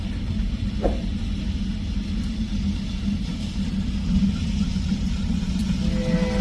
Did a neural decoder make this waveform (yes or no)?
no